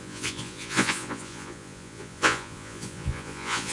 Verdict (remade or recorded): remade